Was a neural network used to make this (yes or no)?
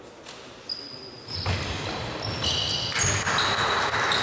no